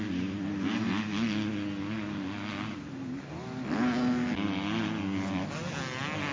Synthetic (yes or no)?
no